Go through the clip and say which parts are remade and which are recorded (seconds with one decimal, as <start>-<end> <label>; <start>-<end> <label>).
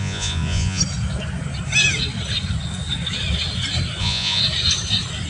0.0-0.8 remade; 0.8-4.0 recorded; 4.0-4.4 remade; 4.4-5.3 recorded